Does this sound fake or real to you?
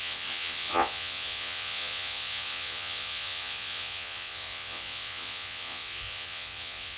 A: fake